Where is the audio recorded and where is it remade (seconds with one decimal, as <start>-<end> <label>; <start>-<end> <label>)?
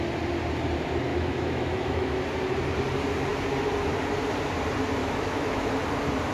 0.0-1.1 recorded; 1.1-2.2 remade; 2.2-5.0 recorded; 5.0-5.7 remade; 5.7-6.3 recorded